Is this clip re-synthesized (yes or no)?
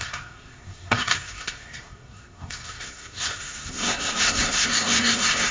yes